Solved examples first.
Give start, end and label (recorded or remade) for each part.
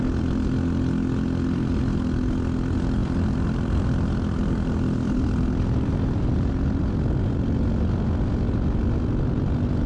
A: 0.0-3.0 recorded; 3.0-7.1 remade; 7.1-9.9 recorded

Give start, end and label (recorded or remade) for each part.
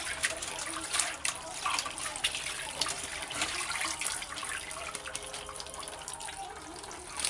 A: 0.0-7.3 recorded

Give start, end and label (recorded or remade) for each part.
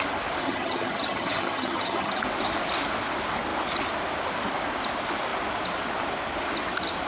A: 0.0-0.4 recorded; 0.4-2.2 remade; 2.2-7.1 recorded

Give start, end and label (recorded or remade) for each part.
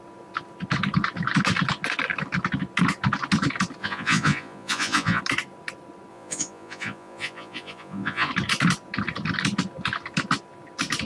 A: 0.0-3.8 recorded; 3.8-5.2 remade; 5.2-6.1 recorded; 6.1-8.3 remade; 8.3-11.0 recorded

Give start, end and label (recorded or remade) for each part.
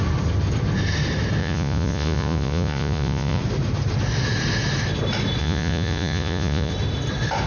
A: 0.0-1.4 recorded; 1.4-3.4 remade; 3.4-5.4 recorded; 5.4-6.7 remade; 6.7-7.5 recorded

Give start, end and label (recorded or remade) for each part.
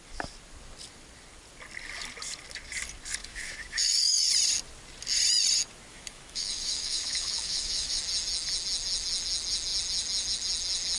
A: 0.0-3.2 recorded; 3.2-4.3 remade; 4.3-5.9 recorded; 5.9-8.0 remade; 8.0-11.0 recorded